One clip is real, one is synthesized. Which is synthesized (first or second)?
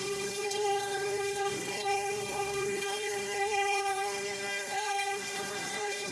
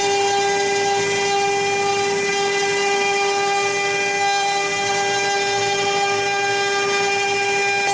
first